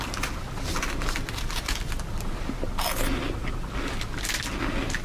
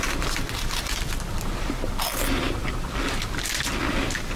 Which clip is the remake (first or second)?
second